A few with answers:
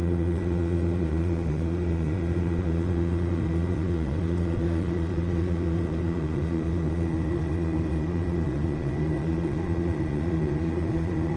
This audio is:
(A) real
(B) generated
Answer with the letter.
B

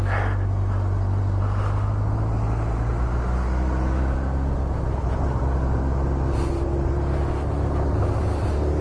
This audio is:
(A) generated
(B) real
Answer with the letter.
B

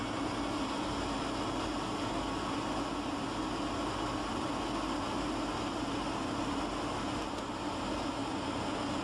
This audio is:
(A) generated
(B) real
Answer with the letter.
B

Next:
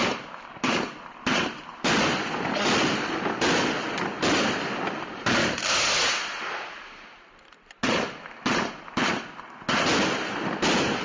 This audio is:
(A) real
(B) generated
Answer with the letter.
A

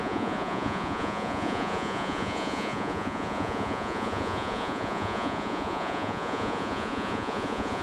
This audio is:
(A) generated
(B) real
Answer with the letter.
A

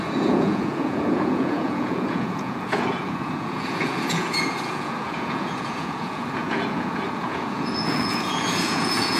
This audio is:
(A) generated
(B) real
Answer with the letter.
A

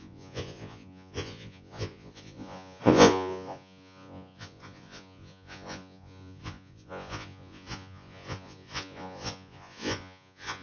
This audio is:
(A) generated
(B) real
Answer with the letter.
A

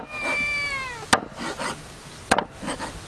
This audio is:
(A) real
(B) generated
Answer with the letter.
A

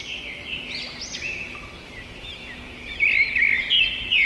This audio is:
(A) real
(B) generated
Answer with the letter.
A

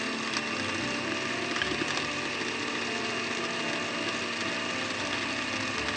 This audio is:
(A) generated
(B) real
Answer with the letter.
B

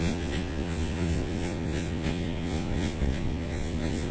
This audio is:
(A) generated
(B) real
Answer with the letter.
A